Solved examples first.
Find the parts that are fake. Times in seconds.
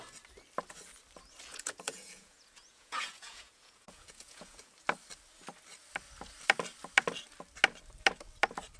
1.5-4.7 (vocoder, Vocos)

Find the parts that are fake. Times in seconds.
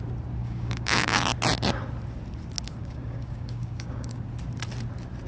0.4-1.2 (codec, DAC); 2.8-4.2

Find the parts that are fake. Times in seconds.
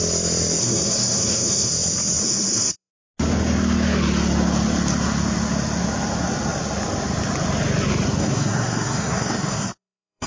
0.6-1.7 (codec, SNAC); 2.2-2.9; 8.2-10.3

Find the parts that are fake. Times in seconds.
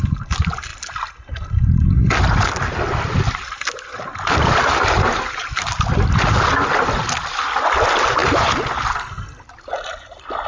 none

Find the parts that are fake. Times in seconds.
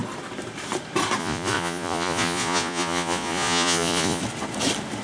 1.2-4.2 (vocoder, Vocos)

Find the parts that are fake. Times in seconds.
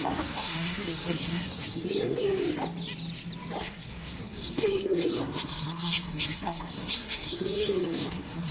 0.0-2.4 (codec, SNAC); 3.6-8.5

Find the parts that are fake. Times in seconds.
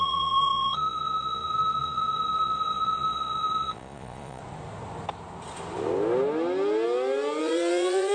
0.0-4.4 (vocoder, Vocos); 7.4-8.1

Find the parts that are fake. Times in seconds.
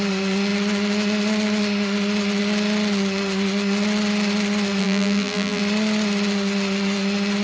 4.8-5.6 (vocoder, BigVGAN v2)